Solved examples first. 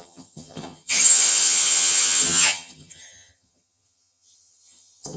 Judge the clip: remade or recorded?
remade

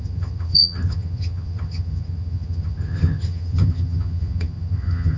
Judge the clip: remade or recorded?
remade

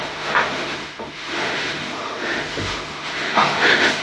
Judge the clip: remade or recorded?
remade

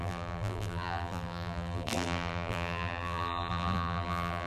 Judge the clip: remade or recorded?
remade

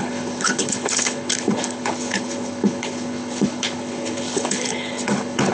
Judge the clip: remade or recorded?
remade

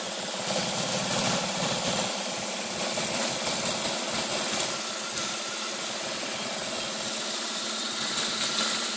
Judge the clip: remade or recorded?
recorded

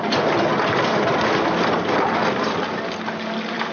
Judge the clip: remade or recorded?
recorded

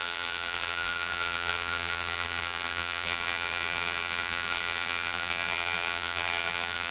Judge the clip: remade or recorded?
remade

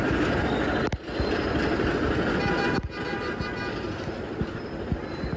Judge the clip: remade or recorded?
recorded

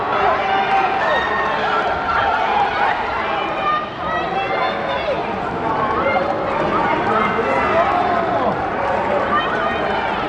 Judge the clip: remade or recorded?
recorded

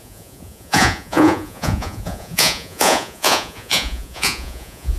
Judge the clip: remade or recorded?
remade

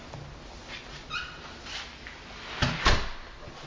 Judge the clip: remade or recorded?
recorded